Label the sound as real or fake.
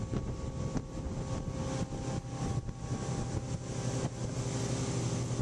real